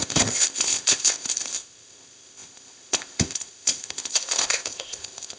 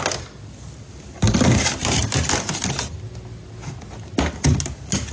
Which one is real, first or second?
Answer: second